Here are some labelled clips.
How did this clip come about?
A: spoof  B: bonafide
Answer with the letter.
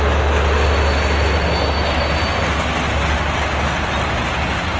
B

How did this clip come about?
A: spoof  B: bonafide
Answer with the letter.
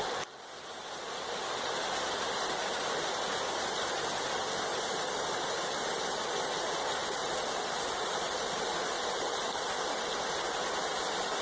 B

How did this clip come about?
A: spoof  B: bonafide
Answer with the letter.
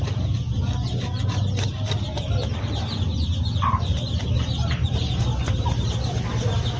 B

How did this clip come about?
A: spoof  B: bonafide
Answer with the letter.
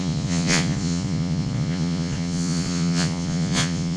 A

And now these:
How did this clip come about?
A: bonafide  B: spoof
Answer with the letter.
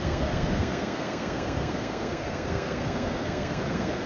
B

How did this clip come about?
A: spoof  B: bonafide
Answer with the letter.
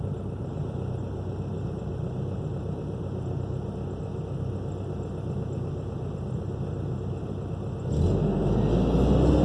B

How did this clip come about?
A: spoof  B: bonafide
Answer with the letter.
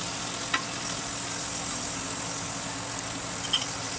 B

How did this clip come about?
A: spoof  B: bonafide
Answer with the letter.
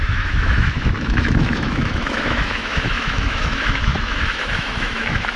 A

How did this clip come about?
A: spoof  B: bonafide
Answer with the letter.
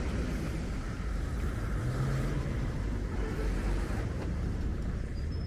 A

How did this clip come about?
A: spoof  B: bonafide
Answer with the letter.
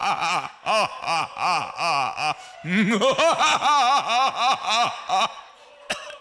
B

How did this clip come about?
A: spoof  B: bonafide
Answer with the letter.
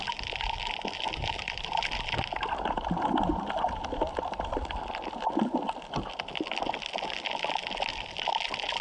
B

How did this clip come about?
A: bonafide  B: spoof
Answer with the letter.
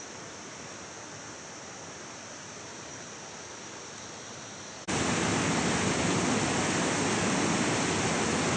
A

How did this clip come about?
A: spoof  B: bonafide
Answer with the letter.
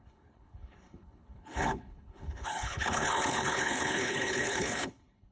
A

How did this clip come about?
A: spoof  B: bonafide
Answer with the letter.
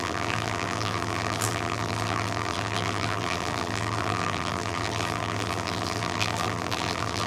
A